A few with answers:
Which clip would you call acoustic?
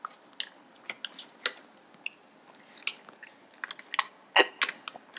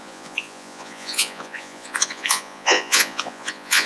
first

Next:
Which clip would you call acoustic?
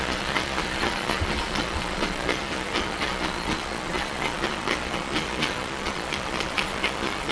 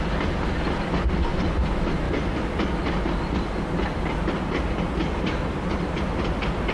second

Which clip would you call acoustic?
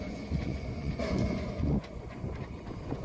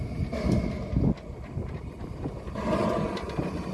second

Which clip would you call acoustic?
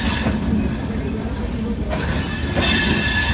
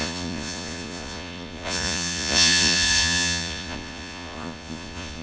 first